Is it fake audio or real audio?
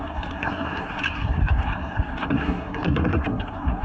fake